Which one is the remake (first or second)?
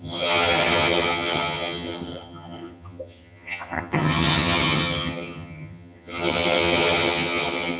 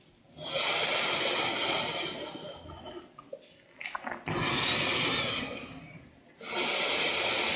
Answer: first